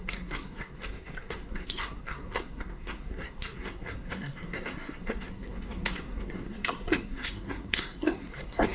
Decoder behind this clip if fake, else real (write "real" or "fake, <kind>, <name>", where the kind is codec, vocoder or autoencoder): fake, codec, SNAC